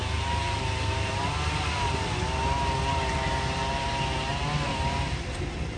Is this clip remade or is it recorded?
recorded